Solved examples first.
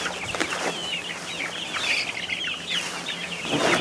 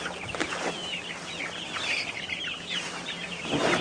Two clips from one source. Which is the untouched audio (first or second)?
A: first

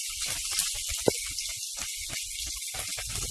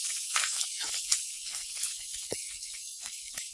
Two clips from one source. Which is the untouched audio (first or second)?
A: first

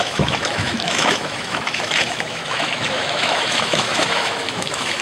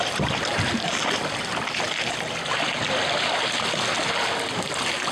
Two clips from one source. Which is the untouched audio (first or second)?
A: second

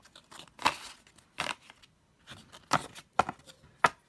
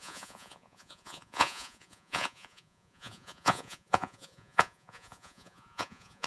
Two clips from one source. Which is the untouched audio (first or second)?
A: first